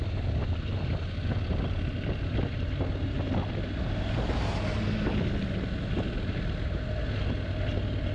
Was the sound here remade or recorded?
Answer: recorded